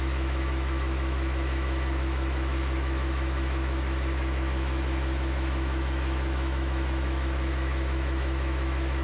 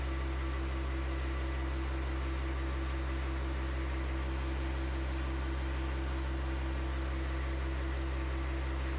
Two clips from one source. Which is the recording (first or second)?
second